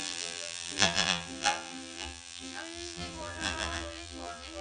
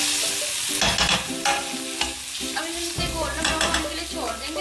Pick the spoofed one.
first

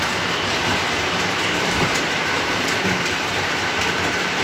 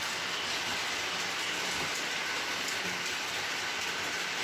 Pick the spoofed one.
first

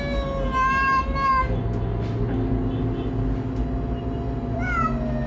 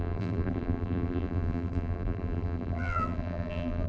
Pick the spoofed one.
second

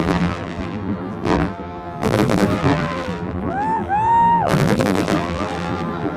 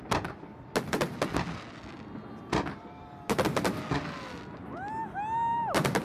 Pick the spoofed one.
first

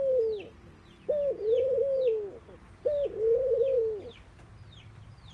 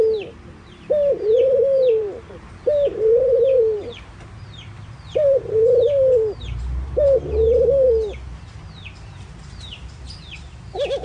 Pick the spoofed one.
second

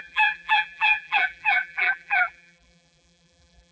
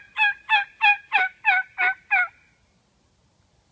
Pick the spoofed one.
first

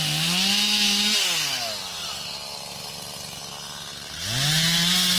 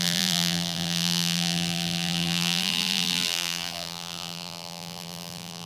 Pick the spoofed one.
second